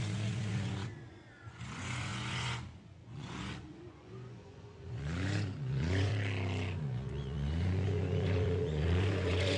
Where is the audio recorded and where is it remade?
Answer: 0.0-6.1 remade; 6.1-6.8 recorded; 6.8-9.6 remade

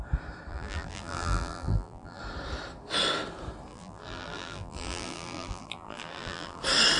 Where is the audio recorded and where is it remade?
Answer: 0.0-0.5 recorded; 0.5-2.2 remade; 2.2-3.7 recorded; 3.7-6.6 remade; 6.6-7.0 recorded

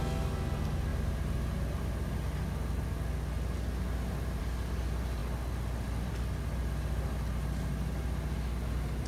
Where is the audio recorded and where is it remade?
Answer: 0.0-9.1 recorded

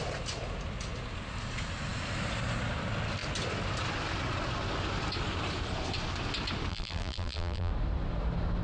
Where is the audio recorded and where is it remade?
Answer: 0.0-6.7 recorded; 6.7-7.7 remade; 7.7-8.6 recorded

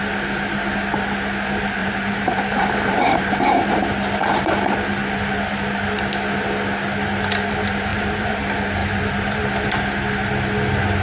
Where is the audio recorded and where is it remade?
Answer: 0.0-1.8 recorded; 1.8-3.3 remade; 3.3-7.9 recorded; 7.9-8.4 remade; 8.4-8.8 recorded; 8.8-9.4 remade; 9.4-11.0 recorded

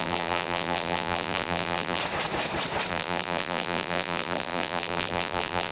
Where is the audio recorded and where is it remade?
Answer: 0.0-2.0 remade; 2.0-2.9 recorded; 2.9-5.7 remade

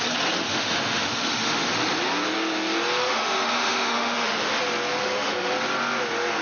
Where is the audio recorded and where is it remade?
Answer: 0.0-0.4 recorded; 0.4-1.7 remade; 1.7-3.0 recorded; 3.0-4.6 remade; 4.6-5.0 recorded; 5.0-5.5 remade; 5.5-6.4 recorded